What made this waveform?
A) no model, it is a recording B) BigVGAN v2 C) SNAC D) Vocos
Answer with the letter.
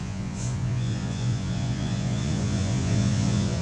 D